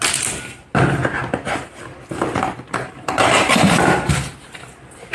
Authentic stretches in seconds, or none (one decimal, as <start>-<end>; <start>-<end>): 0.0-5.1